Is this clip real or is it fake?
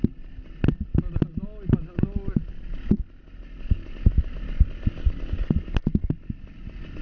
real